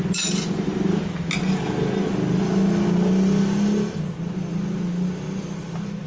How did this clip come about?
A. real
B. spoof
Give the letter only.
A